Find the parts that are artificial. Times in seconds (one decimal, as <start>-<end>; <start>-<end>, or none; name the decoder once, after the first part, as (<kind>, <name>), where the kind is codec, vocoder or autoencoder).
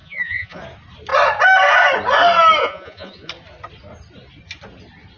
0.0-0.6 (vocoder, Vocos); 2.6-3.3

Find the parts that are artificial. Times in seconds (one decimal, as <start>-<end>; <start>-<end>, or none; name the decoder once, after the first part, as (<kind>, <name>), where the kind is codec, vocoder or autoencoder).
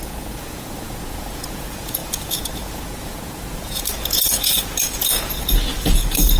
0.0-6.4 (vocoder, Vocos)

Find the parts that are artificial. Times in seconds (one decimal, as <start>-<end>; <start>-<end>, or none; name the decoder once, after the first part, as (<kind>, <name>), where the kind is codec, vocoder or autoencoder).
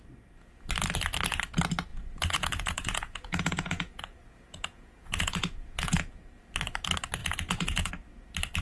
1.9-6.1 (vocoder, Vocos); 7.2-7.9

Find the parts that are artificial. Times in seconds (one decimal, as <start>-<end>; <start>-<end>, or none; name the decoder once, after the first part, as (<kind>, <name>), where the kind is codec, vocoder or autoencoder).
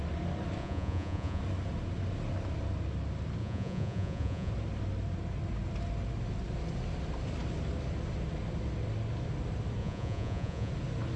0.6-1.4 (vocoder, Vocos); 3.4-4.5; 9.8-10.7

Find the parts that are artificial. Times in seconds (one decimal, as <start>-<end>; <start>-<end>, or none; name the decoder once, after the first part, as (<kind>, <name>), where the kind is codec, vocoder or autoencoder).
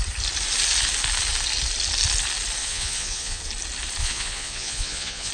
2.6-3.4 (vocoder, Vocos); 4.0-5.3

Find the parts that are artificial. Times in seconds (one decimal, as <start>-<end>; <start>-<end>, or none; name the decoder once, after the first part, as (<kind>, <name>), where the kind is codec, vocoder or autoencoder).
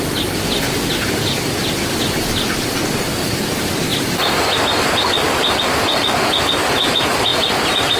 none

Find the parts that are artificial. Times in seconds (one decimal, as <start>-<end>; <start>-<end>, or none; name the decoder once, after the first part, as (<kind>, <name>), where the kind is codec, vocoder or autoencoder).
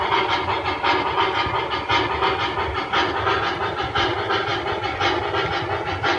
none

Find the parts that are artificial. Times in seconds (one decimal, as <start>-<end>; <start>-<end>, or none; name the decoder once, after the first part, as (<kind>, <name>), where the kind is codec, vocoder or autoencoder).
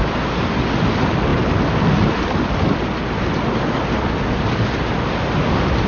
none